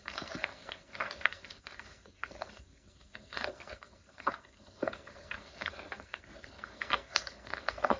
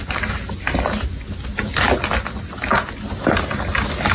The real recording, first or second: second